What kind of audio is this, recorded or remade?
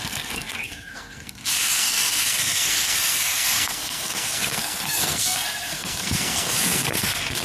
remade